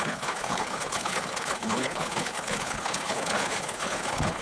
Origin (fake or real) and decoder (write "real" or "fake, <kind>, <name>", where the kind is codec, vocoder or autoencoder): fake, codec, HILCodec